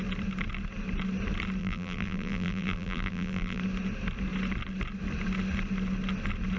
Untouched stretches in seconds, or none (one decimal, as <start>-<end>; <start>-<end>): 0.0-1.6; 3.6-6.6